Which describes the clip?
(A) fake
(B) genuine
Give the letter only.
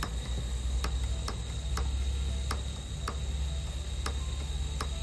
B